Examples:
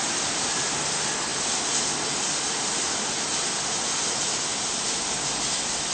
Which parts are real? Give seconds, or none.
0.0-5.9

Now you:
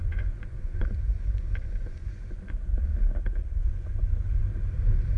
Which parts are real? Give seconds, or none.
2.9-3.6; 4.4-5.2

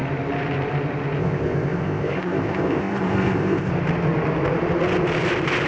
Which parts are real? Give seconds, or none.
0.0-1.2; 3.7-5.7

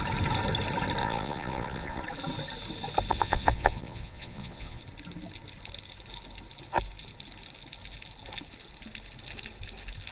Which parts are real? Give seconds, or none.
0.0-1.0; 2.0-3.1; 4.8-10.1

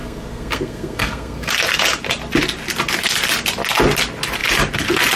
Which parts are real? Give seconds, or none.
1.5-5.2

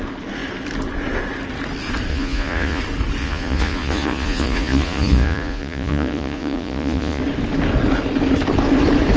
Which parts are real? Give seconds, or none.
0.0-2.1; 2.8-3.2; 7.2-9.2

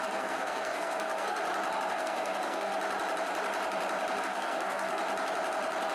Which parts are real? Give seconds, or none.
1.4-1.9; 2.7-4.2; 5.0-5.9

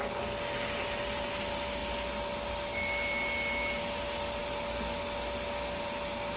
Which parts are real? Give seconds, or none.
0.0-6.4